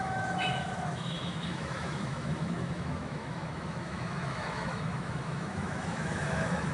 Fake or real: fake